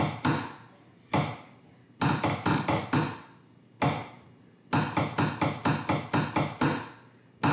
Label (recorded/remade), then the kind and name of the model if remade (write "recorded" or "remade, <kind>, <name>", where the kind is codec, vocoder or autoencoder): recorded